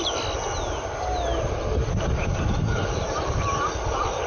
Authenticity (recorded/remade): recorded